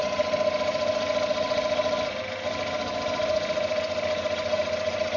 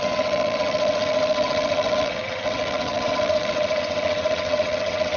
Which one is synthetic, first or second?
second